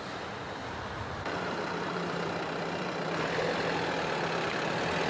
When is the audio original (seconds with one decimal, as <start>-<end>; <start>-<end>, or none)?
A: 0.0-0.6; 3.4-5.1

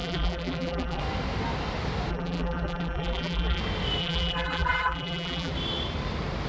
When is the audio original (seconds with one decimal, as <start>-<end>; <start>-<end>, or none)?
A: 1.0-2.1; 3.6-4.0; 5.5-6.5

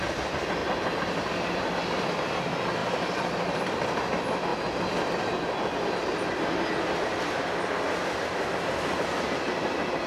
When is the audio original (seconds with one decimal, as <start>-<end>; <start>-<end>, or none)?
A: 0.0-0.6; 1.7-2.8; 3.6-10.1

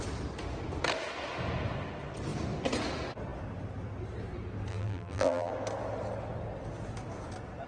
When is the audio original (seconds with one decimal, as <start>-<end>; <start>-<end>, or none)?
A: 0.0-4.7; 5.5-7.7

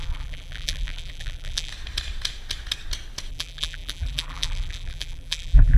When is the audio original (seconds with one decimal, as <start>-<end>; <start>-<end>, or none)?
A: 1.7-3.3

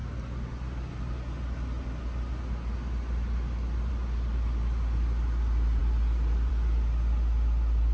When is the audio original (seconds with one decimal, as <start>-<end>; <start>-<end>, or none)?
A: 0.0-7.9

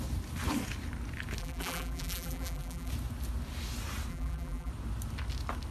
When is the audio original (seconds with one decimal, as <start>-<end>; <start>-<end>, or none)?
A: 0.0-1.4; 2.9-4.1; 4.7-5.7

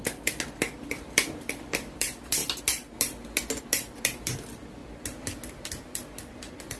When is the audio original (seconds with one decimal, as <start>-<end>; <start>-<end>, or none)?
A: 4.8-5.6